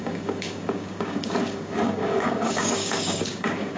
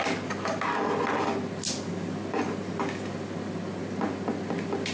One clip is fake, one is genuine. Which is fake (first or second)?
first